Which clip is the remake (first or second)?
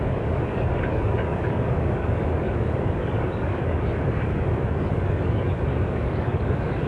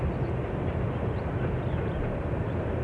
first